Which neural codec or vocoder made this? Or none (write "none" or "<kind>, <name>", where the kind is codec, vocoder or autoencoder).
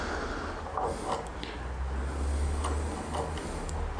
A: none